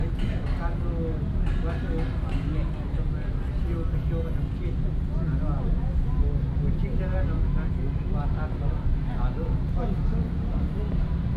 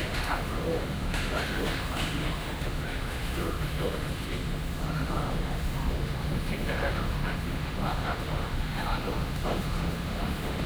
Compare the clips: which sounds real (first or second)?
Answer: first